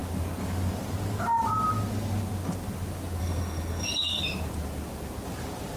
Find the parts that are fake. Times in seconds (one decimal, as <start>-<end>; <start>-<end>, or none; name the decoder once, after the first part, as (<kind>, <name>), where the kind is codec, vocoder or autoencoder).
3.2-4.2 (codec, SNAC)

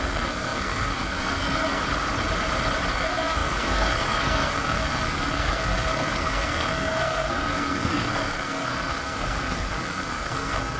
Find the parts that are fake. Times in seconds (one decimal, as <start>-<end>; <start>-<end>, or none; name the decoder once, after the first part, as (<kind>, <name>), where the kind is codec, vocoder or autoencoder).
0.0-1.8 (codec, SNAC); 2.9-10.8

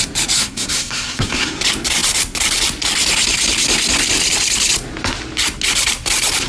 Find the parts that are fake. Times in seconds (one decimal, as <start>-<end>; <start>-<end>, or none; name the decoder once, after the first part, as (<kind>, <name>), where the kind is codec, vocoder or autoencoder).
0.4-1.6 (codec, SNAC)

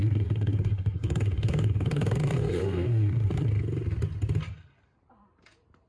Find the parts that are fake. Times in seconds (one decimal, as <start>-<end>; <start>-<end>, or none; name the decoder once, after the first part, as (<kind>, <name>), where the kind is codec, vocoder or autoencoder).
0.0-3.5 (codec, SNAC)